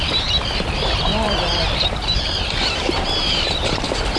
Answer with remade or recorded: remade